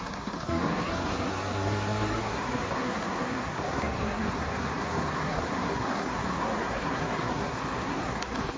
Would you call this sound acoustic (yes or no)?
no